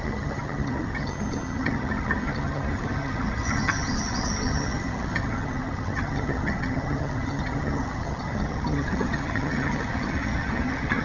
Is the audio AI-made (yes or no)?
yes